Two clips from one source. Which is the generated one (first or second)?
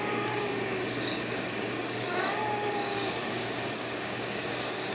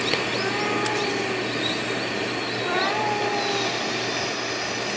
first